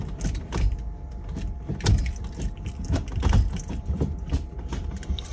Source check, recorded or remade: recorded